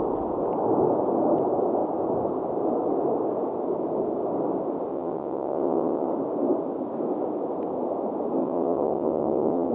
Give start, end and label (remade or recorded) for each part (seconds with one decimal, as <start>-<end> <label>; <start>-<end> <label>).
0.0-4.9 recorded; 4.9-6.1 remade; 6.1-8.4 recorded; 8.4-9.7 remade